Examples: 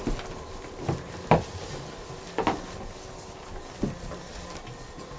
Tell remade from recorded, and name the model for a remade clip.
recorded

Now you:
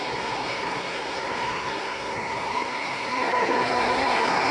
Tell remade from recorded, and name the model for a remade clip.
remade, codec, SNAC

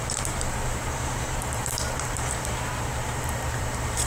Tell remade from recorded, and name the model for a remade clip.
remade, vocoder, BigVGAN v2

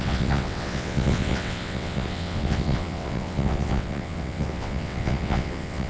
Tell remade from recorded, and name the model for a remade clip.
remade, vocoder, WaveNeXt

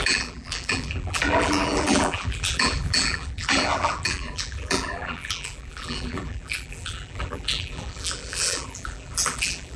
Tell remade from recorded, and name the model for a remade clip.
remade, vocoder, BigVGAN v2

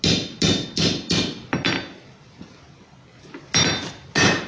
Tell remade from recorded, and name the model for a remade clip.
recorded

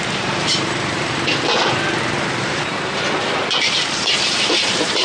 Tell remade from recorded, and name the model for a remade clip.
remade, vocoder, BigVGAN v2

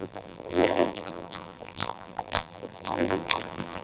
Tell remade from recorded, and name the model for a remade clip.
remade, vocoder, BigVGAN v2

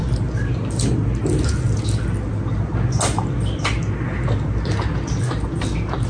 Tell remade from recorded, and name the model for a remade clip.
recorded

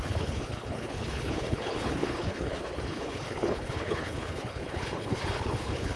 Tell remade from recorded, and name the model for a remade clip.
remade, codec, HILCodec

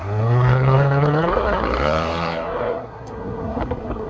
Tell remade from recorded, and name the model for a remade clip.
remade, codec, SNAC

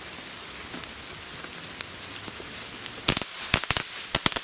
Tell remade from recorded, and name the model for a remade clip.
recorded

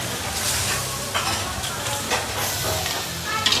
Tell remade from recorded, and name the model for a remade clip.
recorded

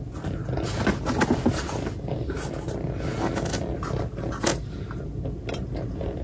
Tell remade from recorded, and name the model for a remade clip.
recorded